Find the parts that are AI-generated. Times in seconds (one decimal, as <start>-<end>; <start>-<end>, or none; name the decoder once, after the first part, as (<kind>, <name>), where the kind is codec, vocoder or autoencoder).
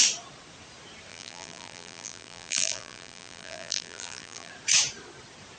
1.1-4.5 (vocoder, BigVGAN v2)